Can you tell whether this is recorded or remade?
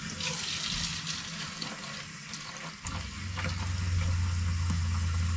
recorded